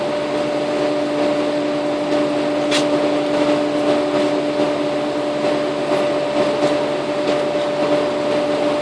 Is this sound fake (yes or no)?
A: no